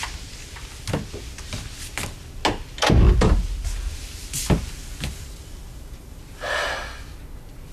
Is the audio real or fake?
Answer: real